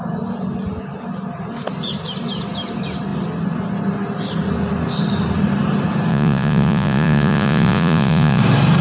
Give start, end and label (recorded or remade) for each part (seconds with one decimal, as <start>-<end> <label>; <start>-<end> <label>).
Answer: 0.0-6.1 recorded; 6.1-8.4 remade; 8.4-8.8 recorded